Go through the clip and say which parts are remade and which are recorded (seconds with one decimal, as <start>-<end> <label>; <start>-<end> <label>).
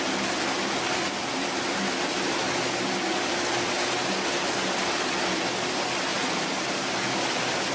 0.0-7.7 recorded